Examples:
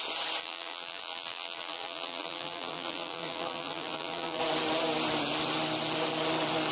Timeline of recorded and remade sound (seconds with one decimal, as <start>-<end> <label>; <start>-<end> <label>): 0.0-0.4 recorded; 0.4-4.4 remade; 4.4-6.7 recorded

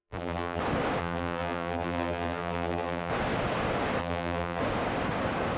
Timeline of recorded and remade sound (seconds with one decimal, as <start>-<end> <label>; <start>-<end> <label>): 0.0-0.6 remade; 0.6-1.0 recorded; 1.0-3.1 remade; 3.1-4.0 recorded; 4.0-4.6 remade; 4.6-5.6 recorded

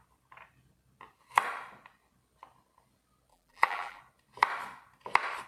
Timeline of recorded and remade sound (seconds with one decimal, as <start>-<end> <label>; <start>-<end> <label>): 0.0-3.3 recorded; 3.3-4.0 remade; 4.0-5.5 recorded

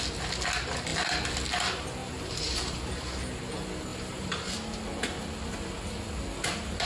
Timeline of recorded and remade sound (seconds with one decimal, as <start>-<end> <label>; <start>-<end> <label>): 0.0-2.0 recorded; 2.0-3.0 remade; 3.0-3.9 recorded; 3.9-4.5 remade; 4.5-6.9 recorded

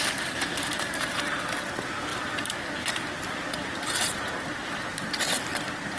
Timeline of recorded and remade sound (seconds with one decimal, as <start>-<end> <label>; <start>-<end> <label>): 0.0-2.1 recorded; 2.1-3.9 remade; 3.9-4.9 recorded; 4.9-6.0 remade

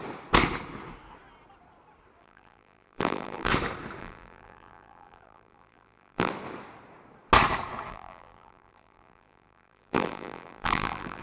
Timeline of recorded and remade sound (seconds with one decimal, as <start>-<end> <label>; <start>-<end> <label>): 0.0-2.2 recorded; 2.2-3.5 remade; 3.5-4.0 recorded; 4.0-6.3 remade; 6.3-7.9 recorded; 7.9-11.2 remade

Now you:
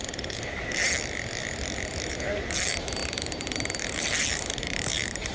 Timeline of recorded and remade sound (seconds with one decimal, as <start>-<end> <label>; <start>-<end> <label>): 0.0-0.8 remade; 0.8-2.1 recorded; 2.1-5.3 remade